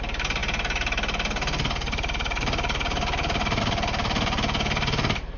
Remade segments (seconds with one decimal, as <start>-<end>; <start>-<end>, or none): none